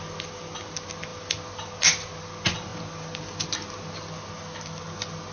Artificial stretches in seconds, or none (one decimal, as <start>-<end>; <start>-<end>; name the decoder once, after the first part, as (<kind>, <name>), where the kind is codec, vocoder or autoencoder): none